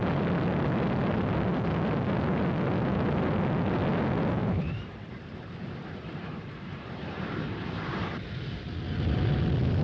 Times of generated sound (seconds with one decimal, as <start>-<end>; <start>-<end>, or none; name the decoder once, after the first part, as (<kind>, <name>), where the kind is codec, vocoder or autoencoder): 4.4-8.2 (vocoder, BigVGAN v2)